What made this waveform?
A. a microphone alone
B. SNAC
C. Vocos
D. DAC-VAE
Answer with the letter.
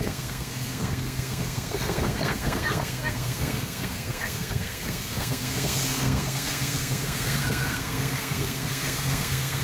B